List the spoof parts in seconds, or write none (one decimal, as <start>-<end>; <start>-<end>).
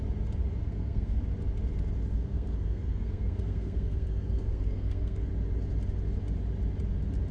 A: 0.6-1.2; 2.1-5.3